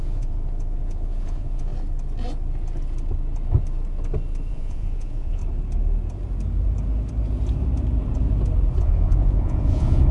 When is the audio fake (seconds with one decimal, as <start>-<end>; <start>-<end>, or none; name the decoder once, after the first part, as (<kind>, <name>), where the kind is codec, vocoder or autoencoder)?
0.0-1.7 (vocoder, Vocos); 4.5-5.4; 8.8-10.1

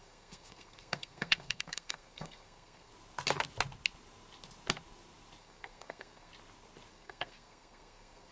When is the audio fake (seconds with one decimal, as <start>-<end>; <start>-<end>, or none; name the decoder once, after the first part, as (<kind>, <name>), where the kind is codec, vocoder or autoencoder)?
0.0-2.9 (codec, SNAC); 5.4-6.3; 6.9-8.3

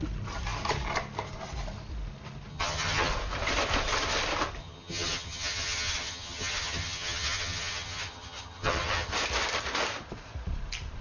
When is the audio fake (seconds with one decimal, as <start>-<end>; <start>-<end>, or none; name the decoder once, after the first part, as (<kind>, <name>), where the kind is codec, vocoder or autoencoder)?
2.5-3.1 (vocoder, HiFi-GAN); 4.6-9.1